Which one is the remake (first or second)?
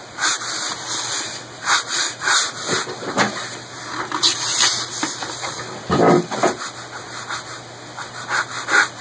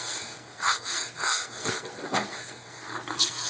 second